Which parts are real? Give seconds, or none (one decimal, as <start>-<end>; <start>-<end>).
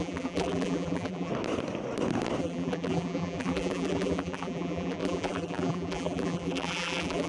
1.3-2.4